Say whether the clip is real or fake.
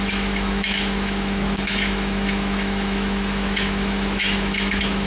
fake